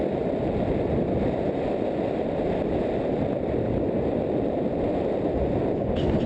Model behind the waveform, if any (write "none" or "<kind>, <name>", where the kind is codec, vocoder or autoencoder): none